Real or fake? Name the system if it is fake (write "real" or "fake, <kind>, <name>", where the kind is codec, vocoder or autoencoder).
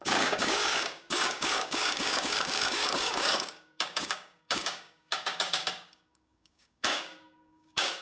fake, codec, DAC